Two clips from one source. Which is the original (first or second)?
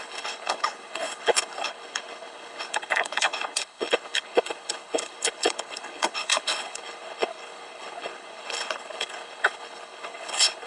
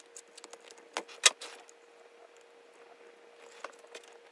second